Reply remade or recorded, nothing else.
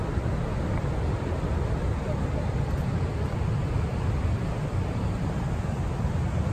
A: recorded